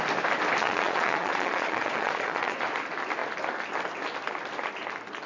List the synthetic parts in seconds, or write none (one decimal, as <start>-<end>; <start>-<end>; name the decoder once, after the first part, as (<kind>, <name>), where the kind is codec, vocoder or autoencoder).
0.6-2.6 (vocoder, Vocos)